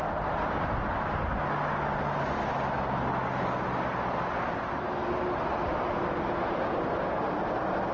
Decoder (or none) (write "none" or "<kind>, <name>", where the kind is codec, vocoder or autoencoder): none